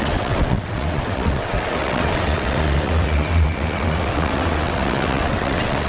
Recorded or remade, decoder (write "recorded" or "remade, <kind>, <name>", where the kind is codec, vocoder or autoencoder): remade, vocoder, WaveNeXt